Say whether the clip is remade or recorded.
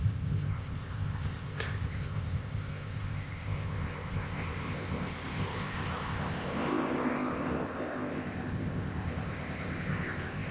remade